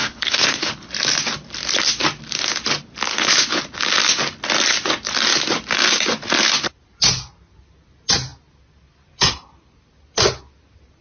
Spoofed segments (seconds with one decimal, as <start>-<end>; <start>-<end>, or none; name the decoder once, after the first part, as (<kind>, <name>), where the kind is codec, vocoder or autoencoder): 0.0-0.9 (codec, HILCodec); 3.1-3.6